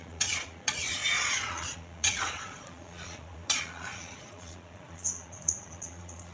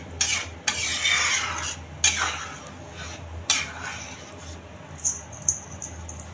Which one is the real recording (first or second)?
second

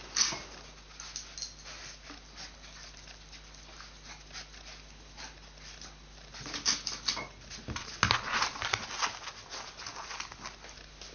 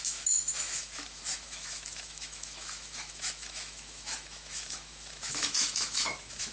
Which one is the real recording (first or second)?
first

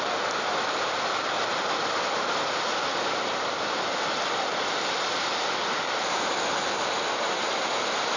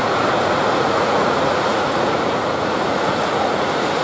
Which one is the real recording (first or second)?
first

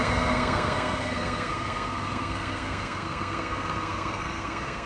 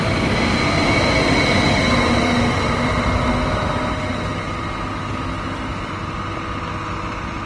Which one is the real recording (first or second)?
second